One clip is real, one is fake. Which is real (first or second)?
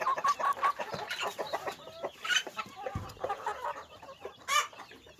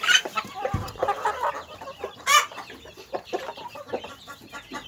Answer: second